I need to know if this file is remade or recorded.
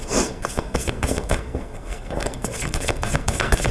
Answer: remade